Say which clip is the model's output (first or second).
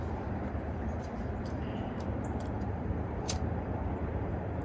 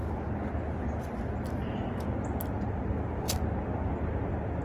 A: first